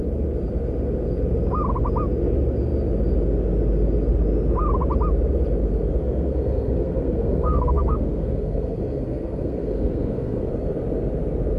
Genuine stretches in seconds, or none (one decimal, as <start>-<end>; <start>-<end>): 0.0-6.0; 10.5-11.6